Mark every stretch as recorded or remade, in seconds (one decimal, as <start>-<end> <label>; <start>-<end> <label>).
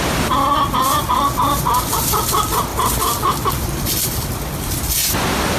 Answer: 0.0-5.6 recorded